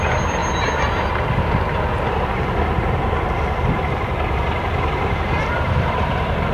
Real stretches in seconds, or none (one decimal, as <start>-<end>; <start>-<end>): 0.0-6.5